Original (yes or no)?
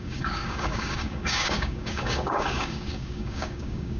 no